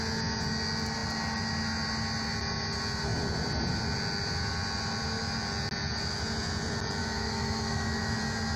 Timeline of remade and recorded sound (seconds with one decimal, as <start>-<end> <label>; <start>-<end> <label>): 0.0-7.0 recorded; 7.0-8.2 remade; 8.2-8.6 recorded